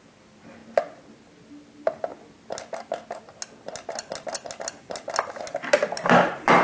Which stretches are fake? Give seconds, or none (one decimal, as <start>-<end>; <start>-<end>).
none